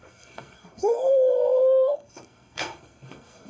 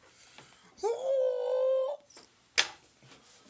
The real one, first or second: second